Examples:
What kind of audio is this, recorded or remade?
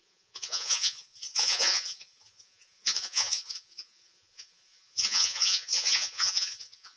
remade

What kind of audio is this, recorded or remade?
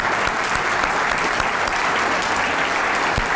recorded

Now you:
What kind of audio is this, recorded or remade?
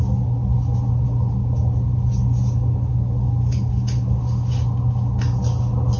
recorded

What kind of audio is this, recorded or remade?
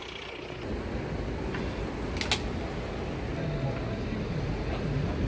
recorded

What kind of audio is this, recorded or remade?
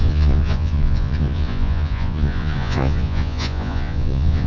remade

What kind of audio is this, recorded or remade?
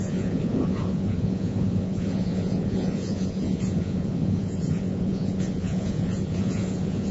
remade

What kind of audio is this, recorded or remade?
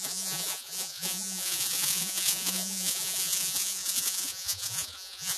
remade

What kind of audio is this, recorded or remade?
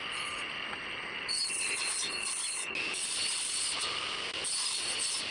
recorded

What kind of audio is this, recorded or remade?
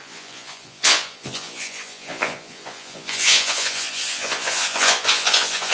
remade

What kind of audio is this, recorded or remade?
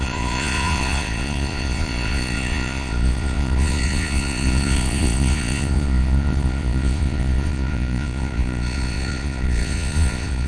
remade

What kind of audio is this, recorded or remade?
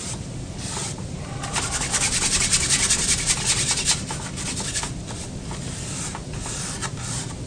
recorded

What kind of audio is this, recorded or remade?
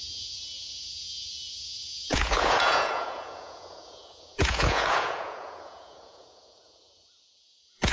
remade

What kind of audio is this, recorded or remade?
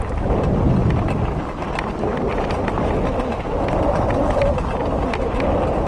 recorded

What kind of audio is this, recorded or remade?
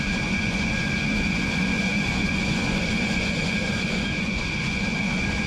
remade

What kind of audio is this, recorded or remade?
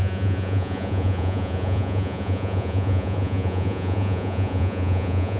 remade